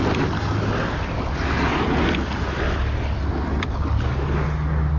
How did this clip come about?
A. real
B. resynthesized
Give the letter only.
A